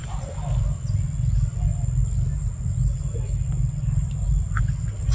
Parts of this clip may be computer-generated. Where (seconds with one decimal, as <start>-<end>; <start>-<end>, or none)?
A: none

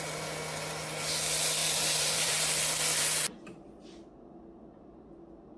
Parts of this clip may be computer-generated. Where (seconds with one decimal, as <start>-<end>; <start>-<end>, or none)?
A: 1.6-2.4

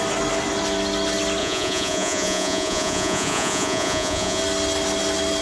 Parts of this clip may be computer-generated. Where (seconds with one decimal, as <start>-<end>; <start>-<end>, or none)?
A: 1.4-4.4

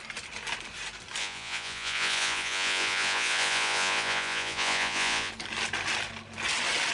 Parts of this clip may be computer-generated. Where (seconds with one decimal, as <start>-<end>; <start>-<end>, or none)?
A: 1.2-5.3